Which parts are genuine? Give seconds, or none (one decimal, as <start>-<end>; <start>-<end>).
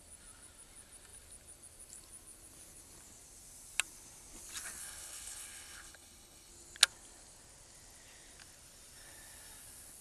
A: 0.0-4.8; 6.5-10.0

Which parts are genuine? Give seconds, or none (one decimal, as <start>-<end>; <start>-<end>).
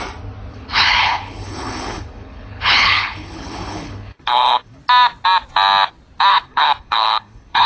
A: 0.0-0.5; 4.8-6.3